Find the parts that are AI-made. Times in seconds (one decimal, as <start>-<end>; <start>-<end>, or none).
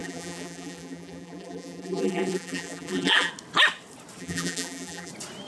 0.0-3.3; 4.2-5.1